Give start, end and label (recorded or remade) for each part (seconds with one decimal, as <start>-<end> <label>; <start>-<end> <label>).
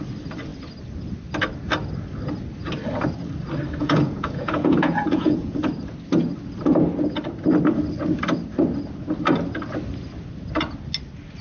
0.0-3.8 recorded; 3.8-5.6 remade; 5.6-11.4 recorded